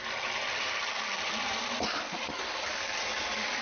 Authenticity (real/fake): real